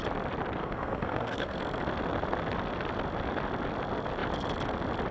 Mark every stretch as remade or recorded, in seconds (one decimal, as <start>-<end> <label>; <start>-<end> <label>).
0.0-0.6 recorded; 0.6-1.6 remade; 1.6-5.1 recorded